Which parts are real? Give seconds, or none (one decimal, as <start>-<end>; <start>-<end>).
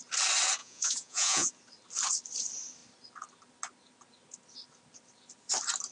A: 0.0-0.6; 1.5-5.9